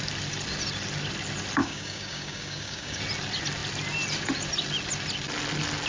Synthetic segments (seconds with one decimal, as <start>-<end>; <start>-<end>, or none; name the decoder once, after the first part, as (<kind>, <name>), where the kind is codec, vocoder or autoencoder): 1.6-3.0 (codec, DAC)